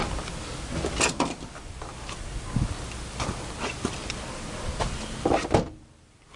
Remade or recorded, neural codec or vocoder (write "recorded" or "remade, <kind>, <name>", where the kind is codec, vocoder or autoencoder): recorded